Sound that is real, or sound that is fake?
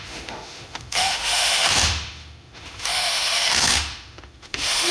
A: fake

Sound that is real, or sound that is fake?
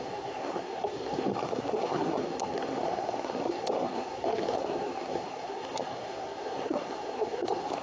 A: fake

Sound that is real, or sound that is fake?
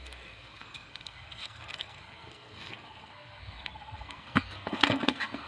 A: fake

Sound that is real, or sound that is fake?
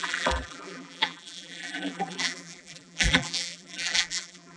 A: fake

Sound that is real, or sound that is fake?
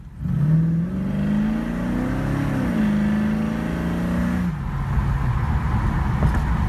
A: real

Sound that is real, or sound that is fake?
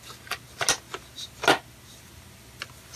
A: real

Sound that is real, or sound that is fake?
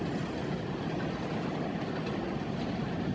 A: real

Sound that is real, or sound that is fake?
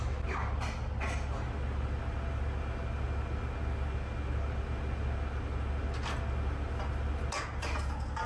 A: real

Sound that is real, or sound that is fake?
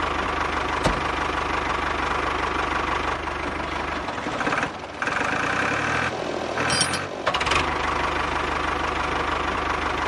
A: real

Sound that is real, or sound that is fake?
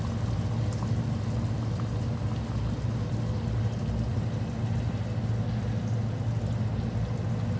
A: real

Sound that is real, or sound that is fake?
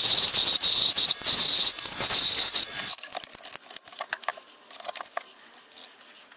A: real